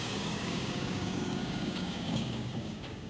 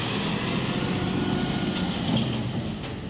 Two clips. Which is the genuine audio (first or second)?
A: second